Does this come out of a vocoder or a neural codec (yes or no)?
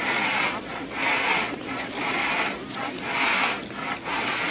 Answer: no